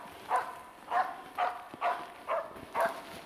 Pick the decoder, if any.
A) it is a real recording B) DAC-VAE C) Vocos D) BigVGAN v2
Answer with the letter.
A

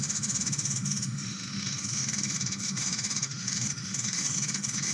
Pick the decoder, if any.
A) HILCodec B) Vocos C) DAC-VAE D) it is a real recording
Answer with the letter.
C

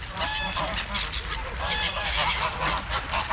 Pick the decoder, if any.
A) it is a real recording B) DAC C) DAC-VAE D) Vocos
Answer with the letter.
A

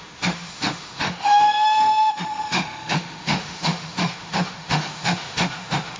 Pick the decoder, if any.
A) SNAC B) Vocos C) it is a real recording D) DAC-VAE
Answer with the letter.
D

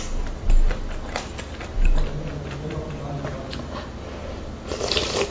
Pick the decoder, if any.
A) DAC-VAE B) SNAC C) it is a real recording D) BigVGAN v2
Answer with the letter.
C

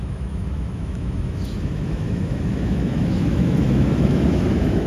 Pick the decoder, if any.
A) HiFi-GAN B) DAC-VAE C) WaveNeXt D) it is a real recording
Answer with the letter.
B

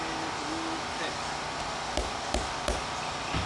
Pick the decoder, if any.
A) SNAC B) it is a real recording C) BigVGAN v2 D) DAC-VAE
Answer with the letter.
B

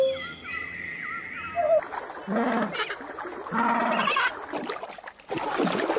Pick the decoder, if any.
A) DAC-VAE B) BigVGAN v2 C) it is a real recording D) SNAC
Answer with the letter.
C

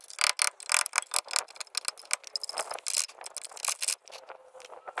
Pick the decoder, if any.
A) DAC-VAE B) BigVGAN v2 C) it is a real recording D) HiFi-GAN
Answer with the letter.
C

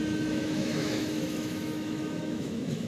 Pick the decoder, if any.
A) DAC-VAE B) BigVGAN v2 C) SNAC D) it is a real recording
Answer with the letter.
A